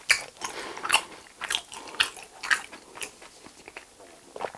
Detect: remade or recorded recorded